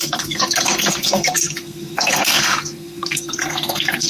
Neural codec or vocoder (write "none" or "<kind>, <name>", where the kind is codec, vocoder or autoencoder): codec, SNAC